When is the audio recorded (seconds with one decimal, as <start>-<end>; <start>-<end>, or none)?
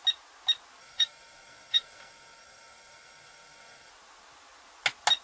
0.0-0.8; 3.9-5.2